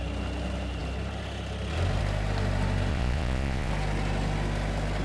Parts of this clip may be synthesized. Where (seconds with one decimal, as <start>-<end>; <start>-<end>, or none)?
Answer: 2.9-3.7